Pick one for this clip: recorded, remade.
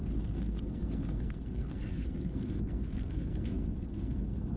remade